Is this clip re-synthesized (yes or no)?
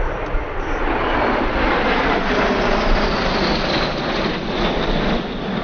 no